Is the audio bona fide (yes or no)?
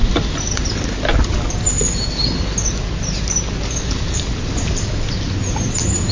yes